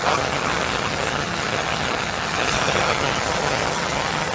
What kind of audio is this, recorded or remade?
remade